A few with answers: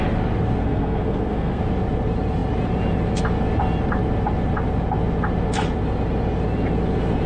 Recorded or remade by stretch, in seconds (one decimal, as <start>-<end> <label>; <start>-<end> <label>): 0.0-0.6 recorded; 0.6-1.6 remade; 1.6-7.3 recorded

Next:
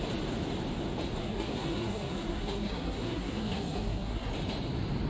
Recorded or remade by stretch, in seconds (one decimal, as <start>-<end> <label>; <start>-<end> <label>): 0.0-1.2 recorded; 1.2-4.3 remade; 4.3-5.1 recorded

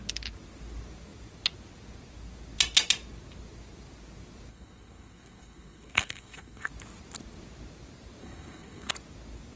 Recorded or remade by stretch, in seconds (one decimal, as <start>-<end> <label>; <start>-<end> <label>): 0.0-4.5 recorded; 4.5-6.7 remade; 6.7-8.2 recorded; 8.2-8.9 remade; 8.9-9.6 recorded

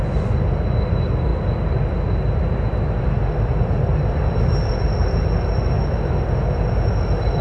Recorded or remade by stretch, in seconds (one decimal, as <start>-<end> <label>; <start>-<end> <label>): 0.0-7.4 recorded

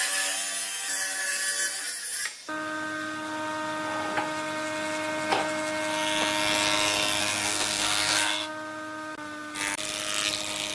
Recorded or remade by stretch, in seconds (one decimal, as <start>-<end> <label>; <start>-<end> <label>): 0.0-7.2 recorded; 7.2-8.5 remade; 8.5-10.7 recorded

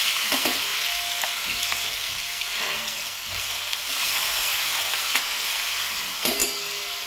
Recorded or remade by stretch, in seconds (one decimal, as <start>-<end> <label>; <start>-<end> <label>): 0.0-7.1 remade